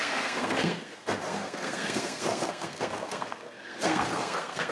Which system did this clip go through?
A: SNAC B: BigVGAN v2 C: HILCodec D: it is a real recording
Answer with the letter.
A